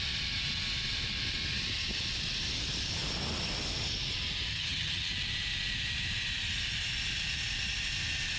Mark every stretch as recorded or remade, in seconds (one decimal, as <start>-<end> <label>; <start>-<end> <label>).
0.0-4.5 recorded; 4.5-5.1 remade; 5.1-8.4 recorded